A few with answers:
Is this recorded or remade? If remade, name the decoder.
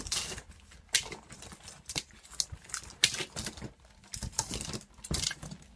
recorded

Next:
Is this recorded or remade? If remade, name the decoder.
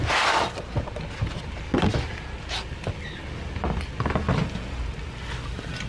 recorded